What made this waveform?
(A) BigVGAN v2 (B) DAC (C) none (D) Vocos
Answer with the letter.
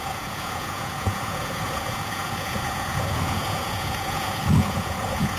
D